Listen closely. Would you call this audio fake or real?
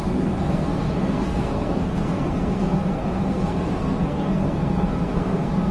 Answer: fake